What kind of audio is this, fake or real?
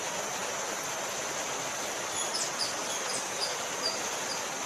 real